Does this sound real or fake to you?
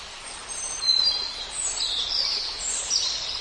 real